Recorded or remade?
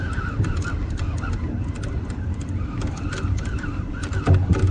recorded